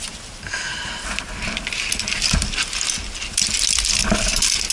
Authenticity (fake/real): real